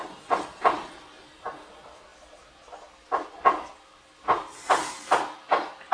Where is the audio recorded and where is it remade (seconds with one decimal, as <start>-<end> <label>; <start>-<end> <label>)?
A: 0.0-5.9 recorded